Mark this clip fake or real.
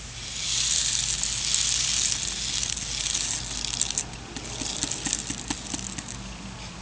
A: real